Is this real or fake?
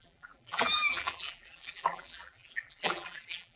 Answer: fake